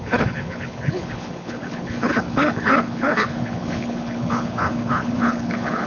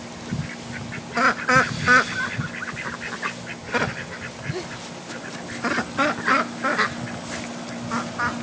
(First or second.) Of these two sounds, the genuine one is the second